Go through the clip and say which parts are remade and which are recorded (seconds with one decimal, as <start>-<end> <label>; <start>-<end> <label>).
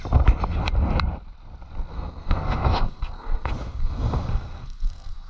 0.0-1.9 recorded; 1.9-5.3 remade